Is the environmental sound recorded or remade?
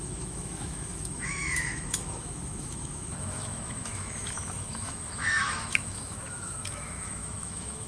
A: remade